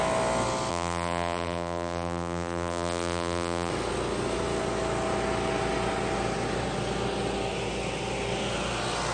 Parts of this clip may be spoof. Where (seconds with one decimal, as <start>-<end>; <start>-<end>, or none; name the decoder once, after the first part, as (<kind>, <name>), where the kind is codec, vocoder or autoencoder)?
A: 0.7-3.7 (vocoder, BigVGAN v2)